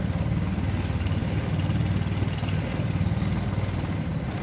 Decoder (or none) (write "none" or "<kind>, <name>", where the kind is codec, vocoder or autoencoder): none